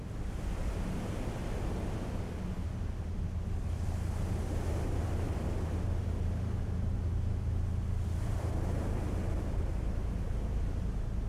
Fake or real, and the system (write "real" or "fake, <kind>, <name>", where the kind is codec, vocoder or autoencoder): real